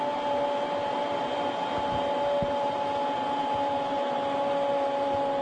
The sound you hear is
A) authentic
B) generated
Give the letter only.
A